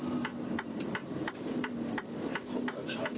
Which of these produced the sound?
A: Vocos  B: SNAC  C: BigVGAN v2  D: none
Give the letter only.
C